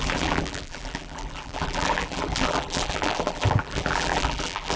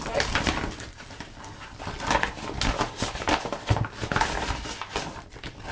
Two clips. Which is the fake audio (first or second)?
first